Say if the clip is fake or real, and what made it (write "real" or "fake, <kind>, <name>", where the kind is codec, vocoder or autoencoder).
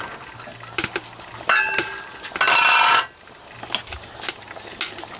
real